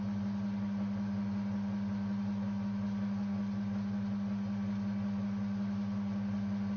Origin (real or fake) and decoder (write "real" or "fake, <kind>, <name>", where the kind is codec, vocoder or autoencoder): real